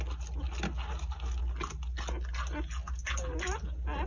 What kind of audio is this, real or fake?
real